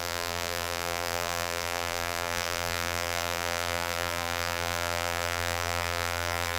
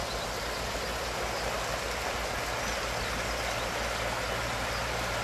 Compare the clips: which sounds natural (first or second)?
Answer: second